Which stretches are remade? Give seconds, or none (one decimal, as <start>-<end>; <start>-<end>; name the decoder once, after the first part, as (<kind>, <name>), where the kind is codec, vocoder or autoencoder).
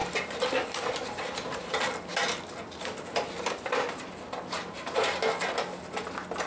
none